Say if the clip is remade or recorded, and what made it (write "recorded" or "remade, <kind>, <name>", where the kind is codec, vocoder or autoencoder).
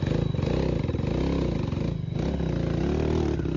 recorded